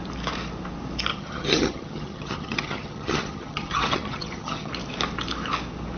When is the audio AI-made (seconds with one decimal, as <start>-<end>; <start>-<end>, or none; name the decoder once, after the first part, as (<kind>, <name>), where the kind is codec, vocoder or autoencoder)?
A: 1.1-4.7 (vocoder, HiFi-GAN)